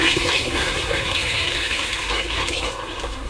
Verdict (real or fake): fake